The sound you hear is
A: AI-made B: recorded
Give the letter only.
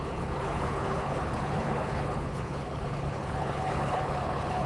A